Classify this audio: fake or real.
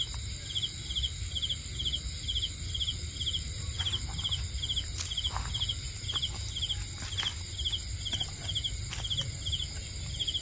real